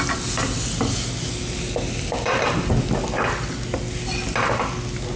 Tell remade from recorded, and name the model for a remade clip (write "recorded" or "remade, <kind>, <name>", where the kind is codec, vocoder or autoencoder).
recorded